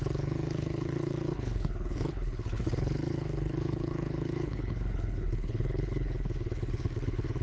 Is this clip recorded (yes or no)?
no